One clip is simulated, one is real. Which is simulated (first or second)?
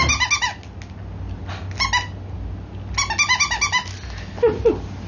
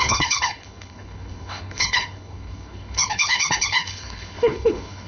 second